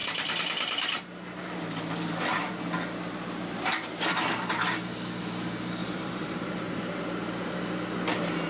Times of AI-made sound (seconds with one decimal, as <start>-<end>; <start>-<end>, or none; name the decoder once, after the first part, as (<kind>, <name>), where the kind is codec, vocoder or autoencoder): 0.0-1.0 (vocoder, BigVGAN v2); 5.8-7.0